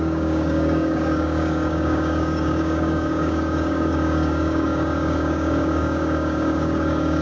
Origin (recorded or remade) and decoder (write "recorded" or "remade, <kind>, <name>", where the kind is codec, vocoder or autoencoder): remade, codec, DAC